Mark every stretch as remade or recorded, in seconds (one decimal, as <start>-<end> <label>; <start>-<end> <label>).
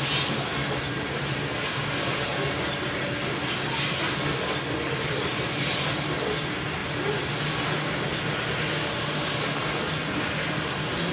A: 0.0-11.1 recorded